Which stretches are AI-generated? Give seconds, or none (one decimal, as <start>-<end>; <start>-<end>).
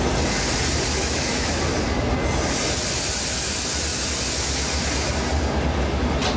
1.0-1.6